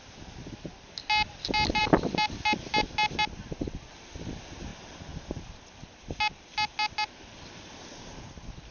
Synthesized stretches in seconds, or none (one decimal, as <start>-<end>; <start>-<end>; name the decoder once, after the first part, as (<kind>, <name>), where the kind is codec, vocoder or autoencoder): 4.7-5.4 (vocoder, BigVGAN v2)